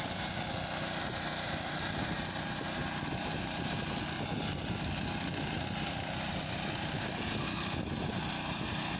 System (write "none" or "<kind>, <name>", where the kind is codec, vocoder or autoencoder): none